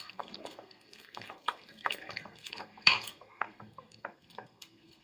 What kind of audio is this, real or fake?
fake